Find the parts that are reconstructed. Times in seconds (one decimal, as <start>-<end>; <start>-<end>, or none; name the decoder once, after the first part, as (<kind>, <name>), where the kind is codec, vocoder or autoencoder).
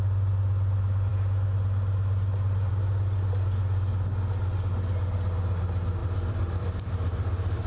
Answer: 6.0-7.7 (vocoder, BigVGAN v2)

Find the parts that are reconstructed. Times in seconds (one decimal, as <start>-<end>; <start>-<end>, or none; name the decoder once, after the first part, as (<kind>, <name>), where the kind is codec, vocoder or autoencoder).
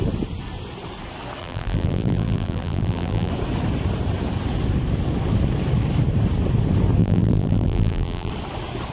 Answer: 1.4-3.3 (vocoder, BigVGAN v2); 7.0-8.3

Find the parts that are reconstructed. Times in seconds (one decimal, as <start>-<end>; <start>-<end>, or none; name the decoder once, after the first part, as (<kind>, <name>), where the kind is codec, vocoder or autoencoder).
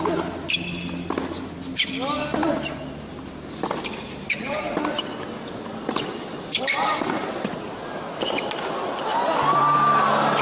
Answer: none